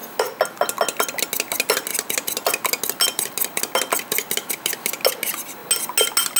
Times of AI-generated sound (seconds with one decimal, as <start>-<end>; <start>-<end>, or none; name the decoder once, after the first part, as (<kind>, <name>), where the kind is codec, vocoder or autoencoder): none